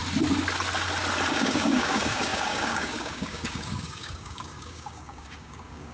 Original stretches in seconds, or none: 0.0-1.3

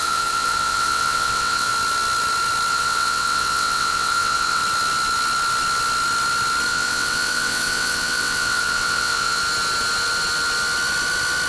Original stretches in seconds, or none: 1.7-2.7; 4.6-6.7; 9.4-11.5

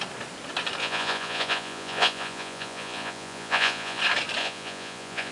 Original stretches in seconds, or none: 0.0-0.8; 4.0-4.4

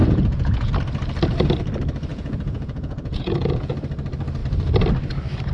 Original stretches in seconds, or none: 0.7-2.1; 3.7-5.5

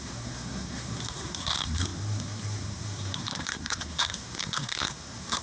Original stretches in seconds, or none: none

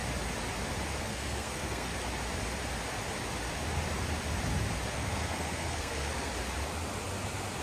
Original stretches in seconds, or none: 0.0-1.0; 1.9-4.9; 6.3-7.6

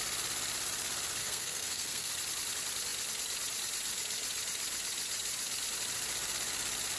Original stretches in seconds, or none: 0.0-1.2; 2.1-7.0

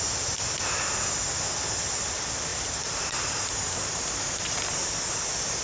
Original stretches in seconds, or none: 0.0-2.5; 4.2-5.6